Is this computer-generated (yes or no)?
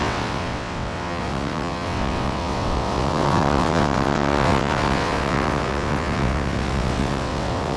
yes